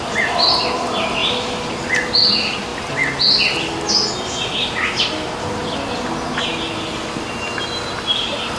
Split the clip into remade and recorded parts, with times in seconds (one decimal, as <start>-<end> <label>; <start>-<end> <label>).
0.0-1.2 recorded; 1.2-1.9 remade; 1.9-8.6 recorded